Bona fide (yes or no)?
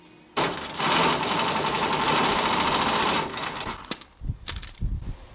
yes